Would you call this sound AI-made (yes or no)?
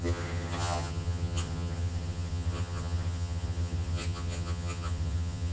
yes